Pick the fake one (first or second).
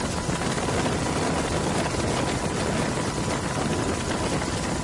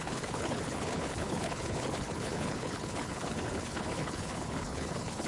second